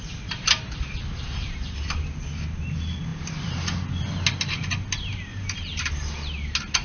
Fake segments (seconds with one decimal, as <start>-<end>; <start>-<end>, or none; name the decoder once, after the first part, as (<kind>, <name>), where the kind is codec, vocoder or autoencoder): 0.0-0.6 (vocoder, BigVGAN v2); 1.3-2.0; 5.3-5.9

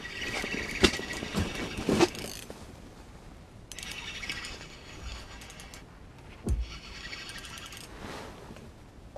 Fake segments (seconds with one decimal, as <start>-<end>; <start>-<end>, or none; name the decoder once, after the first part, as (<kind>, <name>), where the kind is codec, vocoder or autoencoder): none

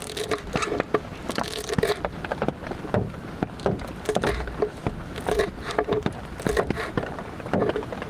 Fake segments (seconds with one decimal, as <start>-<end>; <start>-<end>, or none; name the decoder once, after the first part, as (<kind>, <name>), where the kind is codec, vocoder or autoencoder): none